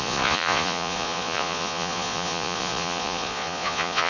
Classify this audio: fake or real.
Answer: fake